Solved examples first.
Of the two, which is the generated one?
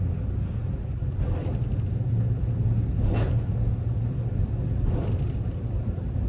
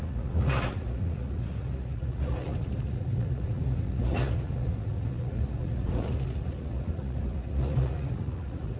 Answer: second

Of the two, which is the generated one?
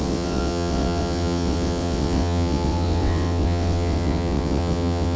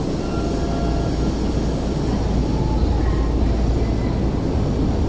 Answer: first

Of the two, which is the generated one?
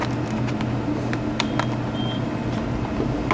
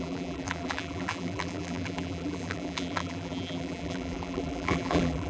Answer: second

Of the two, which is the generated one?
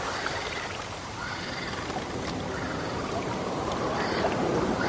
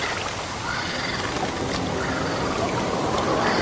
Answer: first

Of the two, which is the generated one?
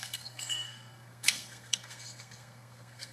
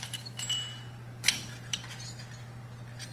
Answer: first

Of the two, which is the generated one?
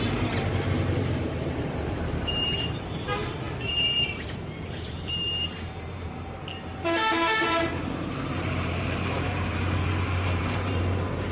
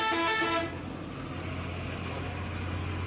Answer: first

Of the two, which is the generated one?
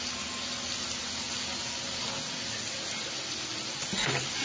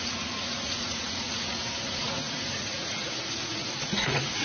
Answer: second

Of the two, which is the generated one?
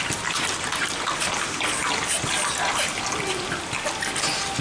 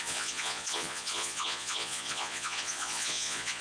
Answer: second